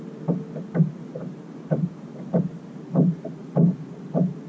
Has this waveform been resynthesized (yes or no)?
no